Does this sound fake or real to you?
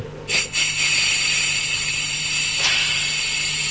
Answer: real